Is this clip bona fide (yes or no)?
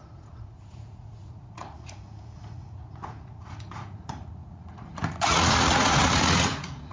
no